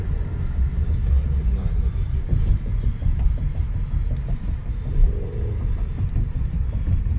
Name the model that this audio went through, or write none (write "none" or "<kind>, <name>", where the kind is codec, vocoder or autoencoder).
vocoder, BigVGAN v2